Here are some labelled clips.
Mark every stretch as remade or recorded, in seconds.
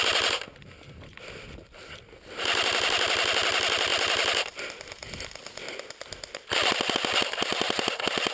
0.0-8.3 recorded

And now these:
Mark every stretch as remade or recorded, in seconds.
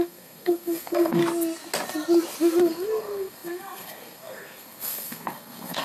0.0-1.2 remade; 1.2-2.6 recorded; 2.6-5.8 remade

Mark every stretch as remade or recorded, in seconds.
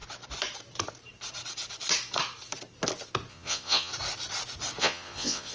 0.0-3.3 recorded; 3.3-3.9 remade; 3.9-4.8 recorded; 4.8-5.5 remade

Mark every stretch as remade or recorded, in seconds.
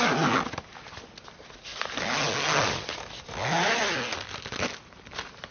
0.0-5.5 recorded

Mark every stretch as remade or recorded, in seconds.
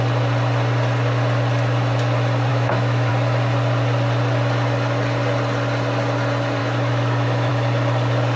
0.0-2.5 recorded; 2.5-3.1 remade; 3.1-6.6 recorded; 6.6-7.5 remade; 7.5-8.4 recorded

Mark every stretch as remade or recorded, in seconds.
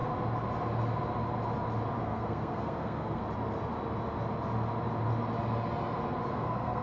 0.0-2.0 recorded; 2.0-3.2 remade; 3.2-6.3 recorded; 6.3-6.8 remade